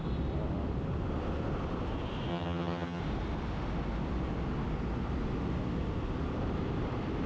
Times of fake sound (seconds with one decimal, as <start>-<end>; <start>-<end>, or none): 2.3-3.0